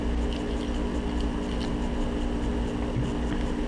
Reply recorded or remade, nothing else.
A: recorded